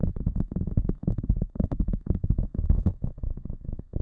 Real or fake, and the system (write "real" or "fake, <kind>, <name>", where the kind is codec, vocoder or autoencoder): fake, codec, SNAC